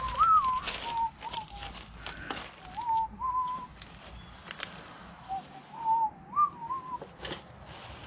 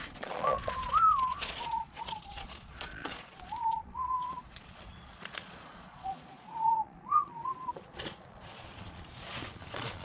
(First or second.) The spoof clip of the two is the second